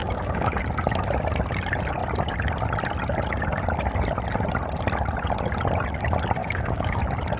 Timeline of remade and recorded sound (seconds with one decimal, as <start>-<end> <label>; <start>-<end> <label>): 0.0-0.6 remade; 0.6-6.4 recorded; 6.4-7.0 remade; 7.0-7.4 recorded